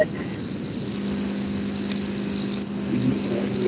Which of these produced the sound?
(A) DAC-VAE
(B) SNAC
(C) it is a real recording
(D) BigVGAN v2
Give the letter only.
C